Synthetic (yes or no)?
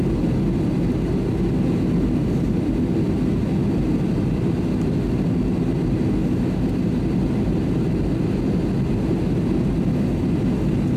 no